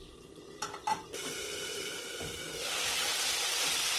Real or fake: real